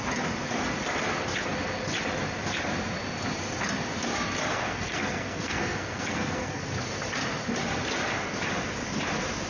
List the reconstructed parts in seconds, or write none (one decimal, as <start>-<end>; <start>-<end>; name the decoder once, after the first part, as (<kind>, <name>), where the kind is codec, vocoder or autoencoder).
4.5-6.6 (codec, SNAC)